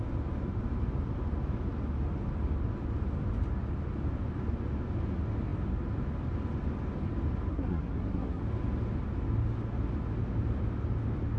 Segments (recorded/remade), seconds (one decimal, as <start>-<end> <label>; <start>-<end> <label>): 0.0-7.5 recorded; 7.5-8.4 remade; 8.4-11.4 recorded